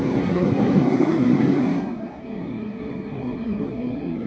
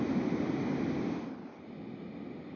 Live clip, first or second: second